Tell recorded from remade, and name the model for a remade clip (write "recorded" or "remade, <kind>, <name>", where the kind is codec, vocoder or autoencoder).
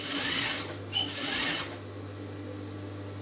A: recorded